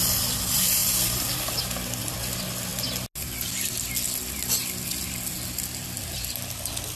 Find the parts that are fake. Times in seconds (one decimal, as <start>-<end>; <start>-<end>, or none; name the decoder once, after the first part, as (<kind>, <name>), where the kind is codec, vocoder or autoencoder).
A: none